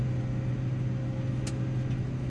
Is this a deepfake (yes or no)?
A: no